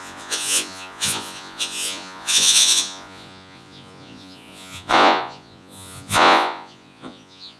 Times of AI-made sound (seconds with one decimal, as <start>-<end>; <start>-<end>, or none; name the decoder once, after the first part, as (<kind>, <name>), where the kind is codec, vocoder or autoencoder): 0.0-7.6 (vocoder, Vocos)